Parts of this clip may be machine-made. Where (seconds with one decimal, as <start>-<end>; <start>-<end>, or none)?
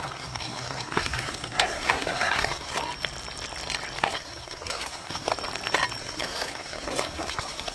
0.0-2.8; 4.0-5.3; 6.0-7.7